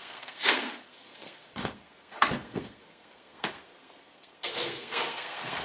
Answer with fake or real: fake